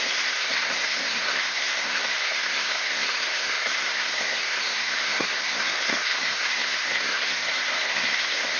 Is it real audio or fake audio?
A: fake